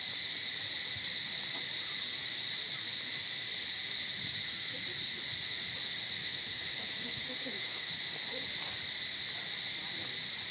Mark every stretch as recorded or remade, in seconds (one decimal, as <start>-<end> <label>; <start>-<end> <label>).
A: 0.0-6.2 recorded; 6.2-7.9 remade; 7.9-10.5 recorded